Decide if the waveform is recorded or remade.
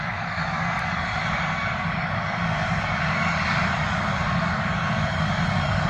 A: remade